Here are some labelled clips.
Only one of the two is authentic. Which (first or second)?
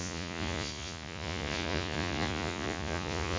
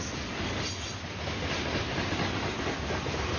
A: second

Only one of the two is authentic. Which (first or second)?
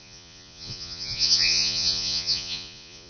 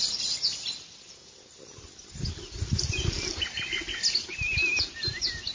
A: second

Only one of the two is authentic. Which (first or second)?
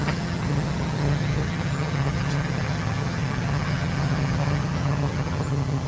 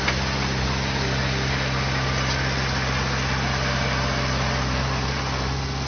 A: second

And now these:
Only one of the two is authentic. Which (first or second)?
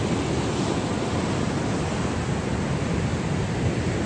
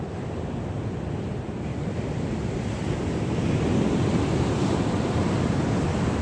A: first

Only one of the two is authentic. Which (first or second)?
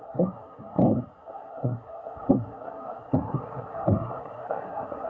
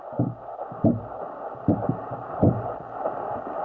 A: second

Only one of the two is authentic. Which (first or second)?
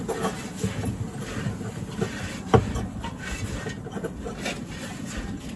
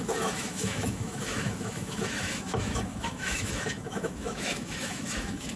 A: first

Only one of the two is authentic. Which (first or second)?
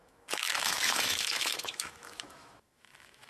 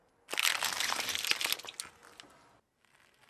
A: second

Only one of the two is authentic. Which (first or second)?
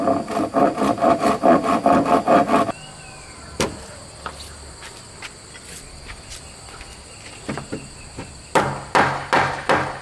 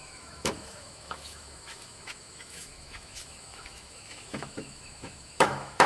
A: first